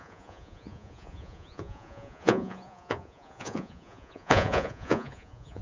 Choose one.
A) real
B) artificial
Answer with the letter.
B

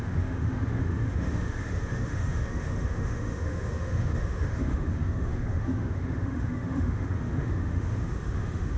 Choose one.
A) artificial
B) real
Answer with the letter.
A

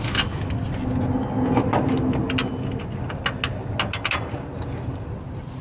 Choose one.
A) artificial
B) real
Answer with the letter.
B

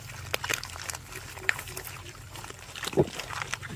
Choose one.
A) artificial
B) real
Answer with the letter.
B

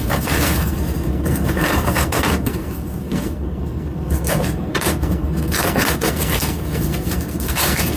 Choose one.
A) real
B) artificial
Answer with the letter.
B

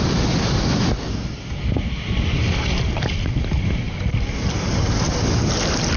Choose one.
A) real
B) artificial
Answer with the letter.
A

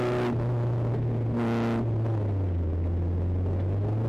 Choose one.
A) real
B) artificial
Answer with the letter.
A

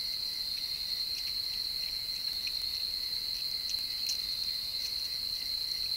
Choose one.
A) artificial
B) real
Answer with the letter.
B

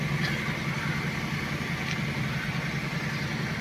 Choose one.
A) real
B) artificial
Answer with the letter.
A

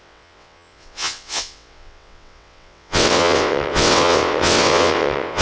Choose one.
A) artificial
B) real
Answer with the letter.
A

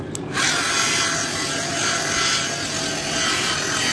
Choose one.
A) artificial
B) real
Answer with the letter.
B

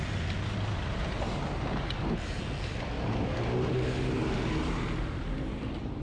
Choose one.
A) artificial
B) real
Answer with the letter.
B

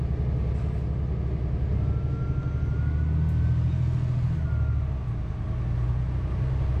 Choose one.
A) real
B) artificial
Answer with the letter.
A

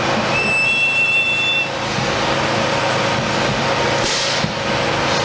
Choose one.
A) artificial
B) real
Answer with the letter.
B